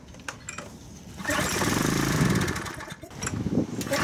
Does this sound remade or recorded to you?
recorded